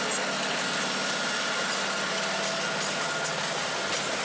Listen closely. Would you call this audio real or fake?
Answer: real